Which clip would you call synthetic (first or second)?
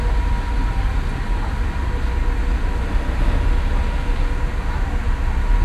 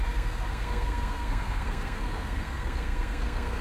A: second